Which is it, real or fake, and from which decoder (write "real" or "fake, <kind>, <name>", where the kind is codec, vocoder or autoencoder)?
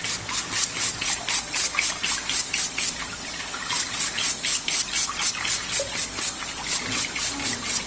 real